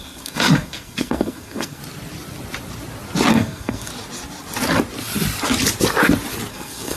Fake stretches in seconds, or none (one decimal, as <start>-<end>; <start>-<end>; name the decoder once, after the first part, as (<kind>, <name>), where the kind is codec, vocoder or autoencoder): 0.0-1.8 (codec, SNAC); 3.3-3.9; 6.5-7.0